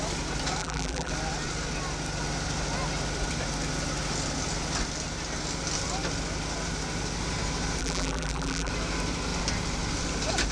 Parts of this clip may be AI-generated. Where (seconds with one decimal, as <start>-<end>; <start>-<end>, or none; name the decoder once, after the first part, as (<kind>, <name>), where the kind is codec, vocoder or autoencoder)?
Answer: 0.6-1.1 (vocoder, BigVGAN v2); 7.8-8.7